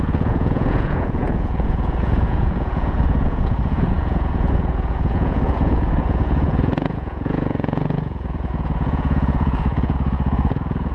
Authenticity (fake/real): fake